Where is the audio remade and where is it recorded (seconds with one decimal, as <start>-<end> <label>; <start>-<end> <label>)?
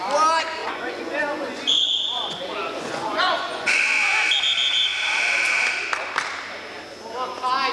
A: 0.0-0.6 recorded; 0.6-3.8 remade; 3.8-7.7 recorded